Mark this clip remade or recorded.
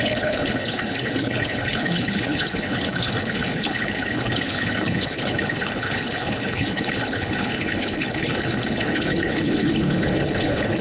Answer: remade